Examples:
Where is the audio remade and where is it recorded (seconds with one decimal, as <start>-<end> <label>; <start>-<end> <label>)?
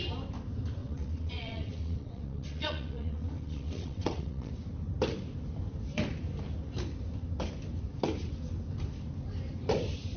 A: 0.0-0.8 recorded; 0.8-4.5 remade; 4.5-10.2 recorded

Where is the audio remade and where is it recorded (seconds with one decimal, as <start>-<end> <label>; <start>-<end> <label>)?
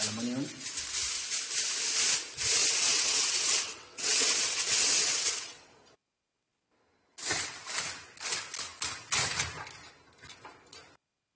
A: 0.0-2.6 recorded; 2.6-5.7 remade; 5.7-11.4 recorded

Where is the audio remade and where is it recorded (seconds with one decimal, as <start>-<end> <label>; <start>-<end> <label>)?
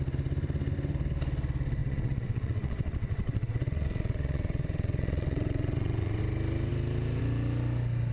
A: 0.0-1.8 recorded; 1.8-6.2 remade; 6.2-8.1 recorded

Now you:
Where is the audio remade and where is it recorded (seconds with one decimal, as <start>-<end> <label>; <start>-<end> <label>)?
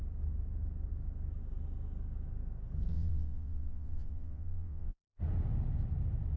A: 0.0-2.9 recorded; 2.9-5.2 remade; 5.2-6.4 recorded